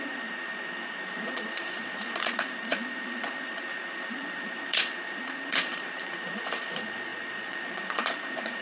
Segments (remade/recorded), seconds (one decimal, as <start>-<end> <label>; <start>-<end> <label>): 0.0-8.6 remade